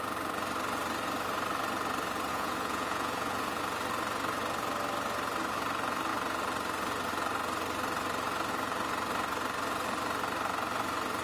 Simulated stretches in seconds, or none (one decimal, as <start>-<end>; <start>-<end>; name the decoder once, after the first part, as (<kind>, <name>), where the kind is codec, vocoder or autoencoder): 2.3-3.6 (vocoder, Vocos)